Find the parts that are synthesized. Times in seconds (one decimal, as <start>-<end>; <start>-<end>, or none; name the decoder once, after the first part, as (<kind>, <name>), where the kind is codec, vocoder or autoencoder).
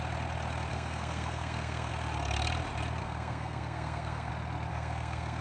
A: 0.7-1.9 (codec, SNAC); 3.0-4.3; 4.7-5.4